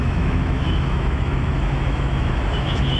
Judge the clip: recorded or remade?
remade